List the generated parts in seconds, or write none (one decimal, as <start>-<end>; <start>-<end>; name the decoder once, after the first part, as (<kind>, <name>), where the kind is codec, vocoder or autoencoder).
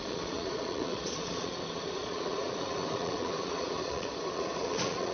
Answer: 0.0-5.1 (vocoder, Vocos)